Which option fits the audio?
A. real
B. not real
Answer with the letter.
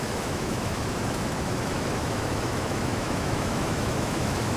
B